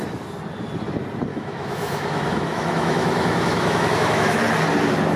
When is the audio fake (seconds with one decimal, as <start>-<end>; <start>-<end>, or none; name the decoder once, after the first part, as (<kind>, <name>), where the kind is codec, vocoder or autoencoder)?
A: 1.3-4.4 (autoencoder, DAC-VAE)